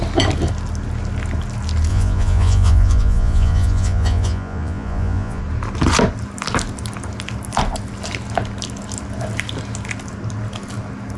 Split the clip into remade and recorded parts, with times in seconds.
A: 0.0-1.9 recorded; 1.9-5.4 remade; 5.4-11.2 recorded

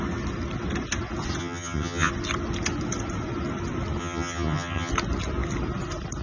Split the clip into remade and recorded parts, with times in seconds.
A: 0.0-1.4 recorded; 1.4-2.1 remade; 2.1-4.0 recorded; 4.0-4.9 remade; 4.9-6.2 recorded